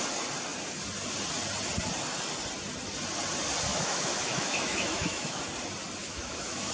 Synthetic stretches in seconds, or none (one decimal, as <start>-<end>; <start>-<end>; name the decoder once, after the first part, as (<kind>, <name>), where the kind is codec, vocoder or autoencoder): 3.7-5.4 (autoencoder, DAC-VAE); 6.0-6.7